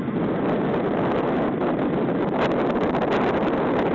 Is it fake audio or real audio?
fake